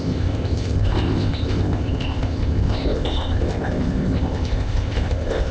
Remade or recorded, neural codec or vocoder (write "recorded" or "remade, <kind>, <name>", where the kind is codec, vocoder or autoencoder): remade, codec, ZipCodec